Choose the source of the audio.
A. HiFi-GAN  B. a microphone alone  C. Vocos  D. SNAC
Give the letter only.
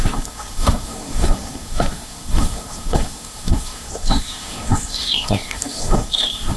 D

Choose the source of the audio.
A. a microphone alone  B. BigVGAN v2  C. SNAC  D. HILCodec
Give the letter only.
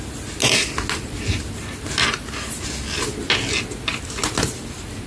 A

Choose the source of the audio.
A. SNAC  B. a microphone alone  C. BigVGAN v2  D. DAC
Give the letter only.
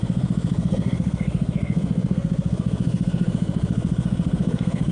A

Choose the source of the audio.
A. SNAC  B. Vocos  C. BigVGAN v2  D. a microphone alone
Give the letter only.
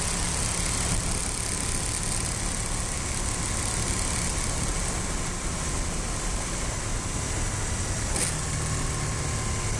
D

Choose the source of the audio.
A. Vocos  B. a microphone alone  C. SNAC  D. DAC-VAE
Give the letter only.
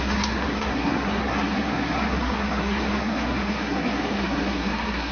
C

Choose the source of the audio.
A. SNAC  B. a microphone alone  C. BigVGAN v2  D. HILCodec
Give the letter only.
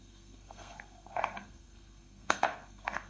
A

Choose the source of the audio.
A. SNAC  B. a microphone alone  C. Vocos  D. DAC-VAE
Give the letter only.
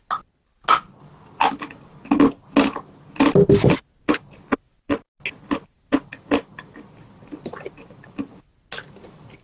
B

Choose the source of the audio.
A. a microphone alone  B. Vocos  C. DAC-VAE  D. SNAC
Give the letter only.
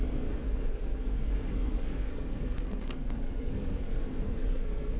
D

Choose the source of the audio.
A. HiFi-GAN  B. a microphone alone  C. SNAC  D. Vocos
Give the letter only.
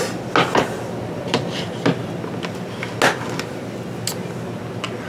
B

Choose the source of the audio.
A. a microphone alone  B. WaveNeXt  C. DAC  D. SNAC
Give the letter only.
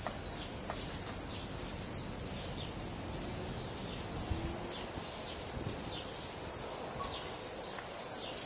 A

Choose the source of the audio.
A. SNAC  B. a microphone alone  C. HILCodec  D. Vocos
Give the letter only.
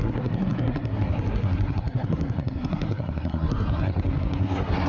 A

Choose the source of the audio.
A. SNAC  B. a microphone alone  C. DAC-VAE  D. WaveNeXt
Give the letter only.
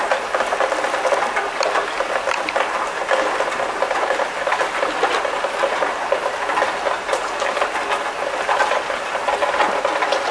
B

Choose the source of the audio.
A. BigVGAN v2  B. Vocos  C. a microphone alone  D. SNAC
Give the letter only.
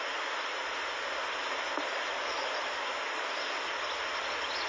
C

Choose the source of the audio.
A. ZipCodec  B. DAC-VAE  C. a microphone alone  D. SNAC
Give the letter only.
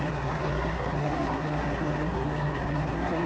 D